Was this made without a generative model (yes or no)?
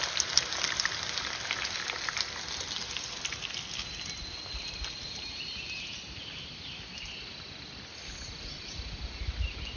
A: yes